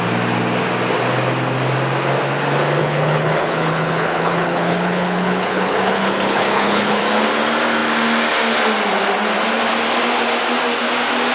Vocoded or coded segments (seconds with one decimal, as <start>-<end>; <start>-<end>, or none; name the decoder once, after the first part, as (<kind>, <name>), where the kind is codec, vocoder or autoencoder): 2.8-7.0 (codec, HILCodec)

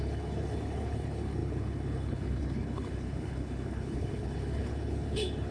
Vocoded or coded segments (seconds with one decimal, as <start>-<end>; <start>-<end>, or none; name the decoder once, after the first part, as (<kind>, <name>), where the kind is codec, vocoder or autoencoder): 0.0-5.5 (codec, HILCodec)

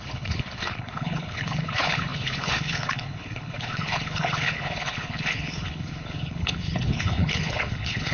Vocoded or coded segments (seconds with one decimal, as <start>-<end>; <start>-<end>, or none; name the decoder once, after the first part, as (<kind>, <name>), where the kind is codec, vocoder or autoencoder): 0.0-8.1 (codec, HILCodec)